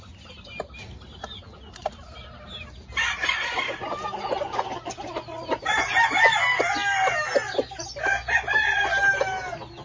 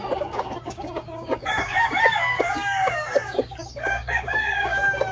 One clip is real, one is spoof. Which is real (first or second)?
first